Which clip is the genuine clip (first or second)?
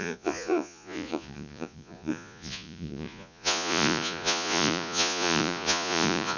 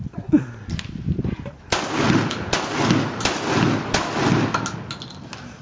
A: second